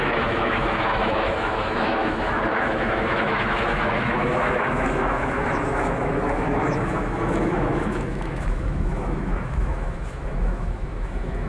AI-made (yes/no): yes